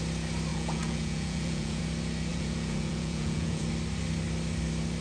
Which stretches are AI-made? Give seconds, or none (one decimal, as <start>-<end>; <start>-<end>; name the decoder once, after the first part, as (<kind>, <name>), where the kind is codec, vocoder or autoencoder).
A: 0.5-1.8 (vocoder, Vocos); 2.3-3.7